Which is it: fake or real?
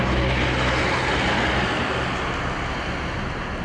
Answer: real